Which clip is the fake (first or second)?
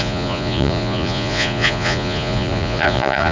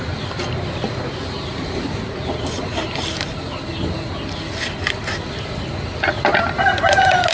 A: first